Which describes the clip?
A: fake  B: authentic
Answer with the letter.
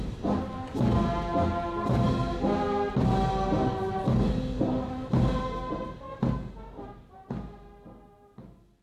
B